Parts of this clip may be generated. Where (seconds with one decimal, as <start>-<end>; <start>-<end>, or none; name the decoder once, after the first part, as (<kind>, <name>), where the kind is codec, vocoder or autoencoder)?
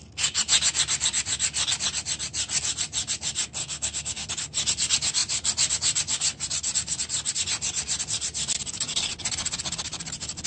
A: 3.6-4.3 (codec, SNAC)